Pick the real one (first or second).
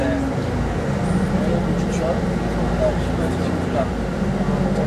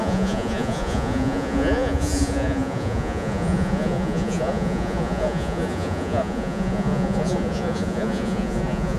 first